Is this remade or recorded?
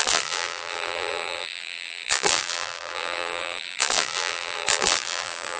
remade